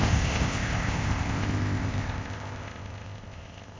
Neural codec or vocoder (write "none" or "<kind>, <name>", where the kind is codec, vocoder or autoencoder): codec, ZipCodec